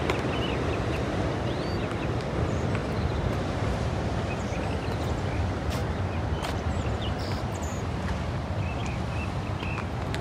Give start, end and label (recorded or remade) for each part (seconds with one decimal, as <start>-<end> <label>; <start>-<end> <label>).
0.0-2.8 recorded; 2.8-4.7 remade; 4.7-5.8 recorded; 5.8-8.4 remade; 8.4-10.2 recorded